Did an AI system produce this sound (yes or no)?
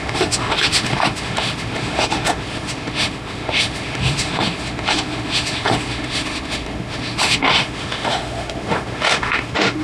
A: yes